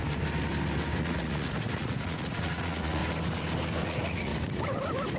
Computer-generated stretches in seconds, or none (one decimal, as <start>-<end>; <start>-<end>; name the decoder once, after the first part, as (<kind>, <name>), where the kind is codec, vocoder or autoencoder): 1.0-3.0 (vocoder, Vocos); 3.8-4.3